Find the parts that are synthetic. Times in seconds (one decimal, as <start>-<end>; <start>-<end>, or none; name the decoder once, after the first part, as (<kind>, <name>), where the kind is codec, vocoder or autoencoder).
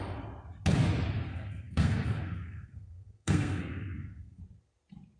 1.3-4.4 (codec, SNAC)